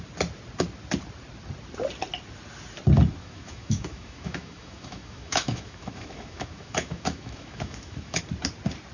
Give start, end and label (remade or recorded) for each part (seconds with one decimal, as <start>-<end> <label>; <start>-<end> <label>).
0.0-3.2 recorded; 3.2-8.2 remade; 8.2-8.9 recorded